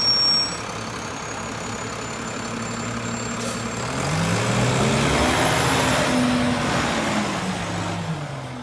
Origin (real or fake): real